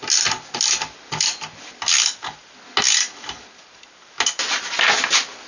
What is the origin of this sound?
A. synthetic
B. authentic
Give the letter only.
B